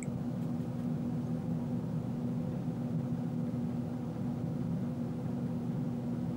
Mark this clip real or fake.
real